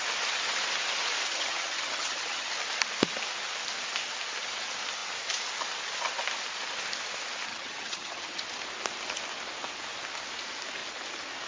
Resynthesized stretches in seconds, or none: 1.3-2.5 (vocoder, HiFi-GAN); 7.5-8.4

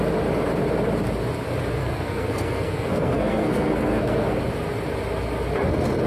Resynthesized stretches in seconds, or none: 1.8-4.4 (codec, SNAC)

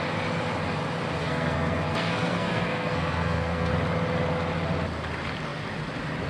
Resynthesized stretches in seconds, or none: 1.2-3.7 (codec, SNAC)

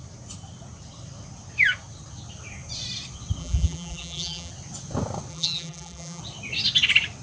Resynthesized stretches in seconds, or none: 3.4-4.5 (vocoder, BigVGAN v2); 5.3-6.2

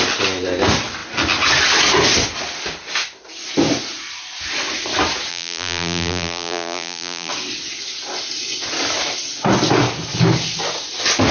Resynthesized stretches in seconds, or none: 5.3-7.3 (vocoder, BigVGAN v2)

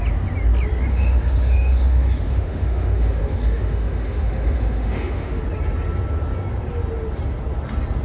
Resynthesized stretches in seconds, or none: 0.9-5.4 (autoencoder, DAC-VAE)

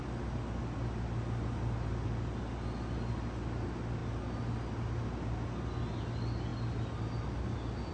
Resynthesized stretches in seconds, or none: none

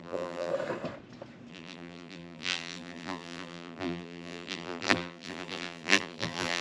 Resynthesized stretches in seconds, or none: 0.0-0.5 (vocoder, BigVGAN v2); 1.5-6.6